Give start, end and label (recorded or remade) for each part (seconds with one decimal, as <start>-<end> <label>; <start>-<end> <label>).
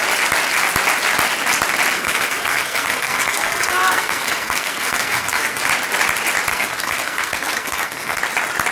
0.0-1.9 recorded; 1.9-5.6 remade; 5.6-6.5 recorded; 6.5-8.2 remade; 8.2-8.7 recorded